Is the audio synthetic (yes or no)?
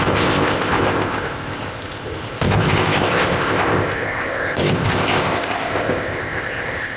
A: yes